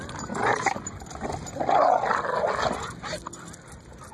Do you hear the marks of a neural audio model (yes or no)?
no